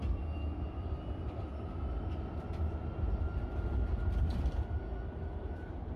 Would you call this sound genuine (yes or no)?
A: yes